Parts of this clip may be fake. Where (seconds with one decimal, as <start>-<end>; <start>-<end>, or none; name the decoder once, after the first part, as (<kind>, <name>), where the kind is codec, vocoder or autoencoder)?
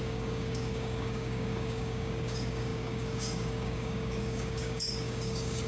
0.0-5.7 (codec, DAC)